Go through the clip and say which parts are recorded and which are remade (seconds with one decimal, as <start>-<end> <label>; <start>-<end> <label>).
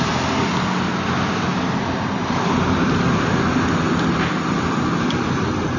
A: 0.0-5.8 recorded